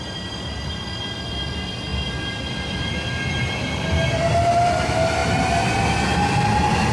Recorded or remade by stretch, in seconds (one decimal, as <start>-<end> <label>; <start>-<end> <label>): 0.0-6.9 recorded